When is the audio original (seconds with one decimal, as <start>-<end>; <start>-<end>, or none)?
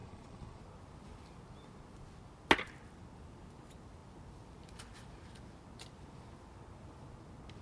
0.6-7.6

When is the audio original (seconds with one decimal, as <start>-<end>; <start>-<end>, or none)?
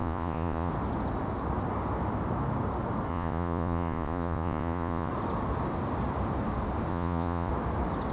0.7-3.1; 5.1-6.9; 7.5-8.1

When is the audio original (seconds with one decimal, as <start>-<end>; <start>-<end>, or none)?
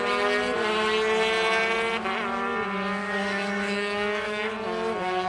0.0-3.0; 4.5-5.3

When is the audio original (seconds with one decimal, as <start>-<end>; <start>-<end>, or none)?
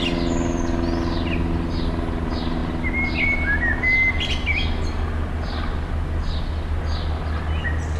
0.0-8.0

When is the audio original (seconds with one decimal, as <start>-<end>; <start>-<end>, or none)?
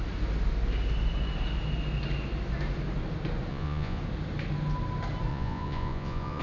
0.0-3.5; 4.0-5.3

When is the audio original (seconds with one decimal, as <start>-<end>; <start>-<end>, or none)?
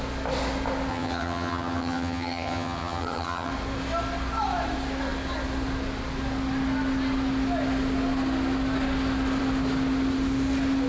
0.0-0.9; 3.5-10.9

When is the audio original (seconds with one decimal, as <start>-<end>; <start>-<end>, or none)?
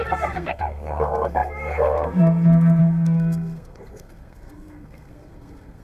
none